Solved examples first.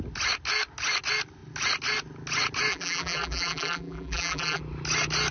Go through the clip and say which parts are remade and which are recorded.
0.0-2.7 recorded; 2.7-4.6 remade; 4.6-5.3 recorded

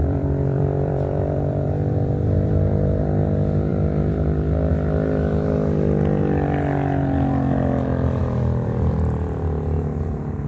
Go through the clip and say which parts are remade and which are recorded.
0.0-3.0 remade; 3.0-3.7 recorded; 3.7-4.7 remade; 4.7-8.2 recorded; 8.2-8.9 remade; 8.9-10.5 recorded

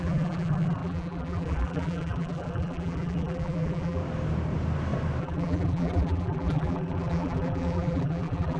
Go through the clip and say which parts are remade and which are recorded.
0.0-4.0 remade; 4.0-5.2 recorded; 5.2-8.6 remade

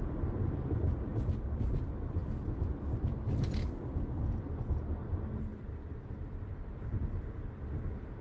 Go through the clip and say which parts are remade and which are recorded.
0.0-2.2 recorded; 2.2-4.5 remade; 4.5-5.5 recorded; 5.5-7.1 remade; 7.1-8.2 recorded

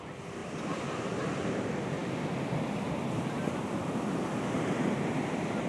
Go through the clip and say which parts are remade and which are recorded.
0.0-0.4 recorded; 0.4-1.6 remade; 1.6-5.7 recorded

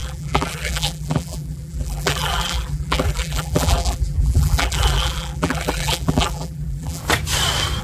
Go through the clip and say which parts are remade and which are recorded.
0.0-7.0 remade; 7.0-7.8 recorded

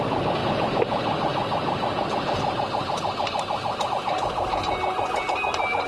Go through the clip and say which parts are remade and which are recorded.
0.0-5.9 recorded